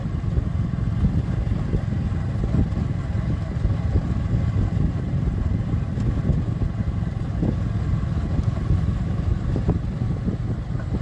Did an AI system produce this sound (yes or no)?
no